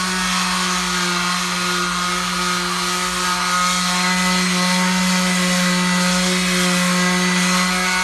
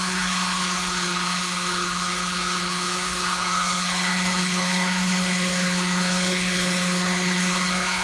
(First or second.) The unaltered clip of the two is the first